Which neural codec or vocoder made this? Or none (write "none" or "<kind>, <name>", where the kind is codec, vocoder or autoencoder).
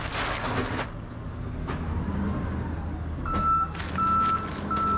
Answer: none